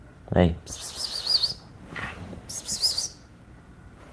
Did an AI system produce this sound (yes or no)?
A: no